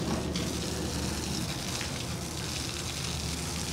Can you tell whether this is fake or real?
real